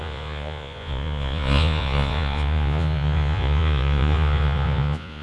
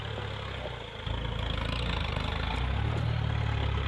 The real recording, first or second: second